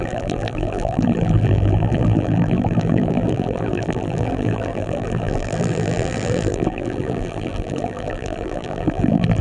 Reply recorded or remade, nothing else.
remade